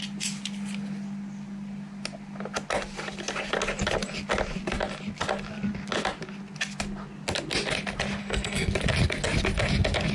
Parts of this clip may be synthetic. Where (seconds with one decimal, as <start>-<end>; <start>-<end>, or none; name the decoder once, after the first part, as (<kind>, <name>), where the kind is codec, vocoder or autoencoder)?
8.2-8.7 (codec, SNAC)